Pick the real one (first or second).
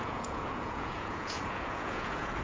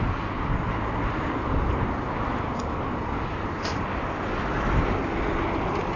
second